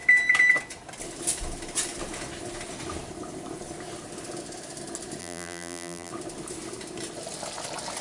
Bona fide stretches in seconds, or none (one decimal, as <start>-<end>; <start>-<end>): 0.0-5.2; 6.1-8.0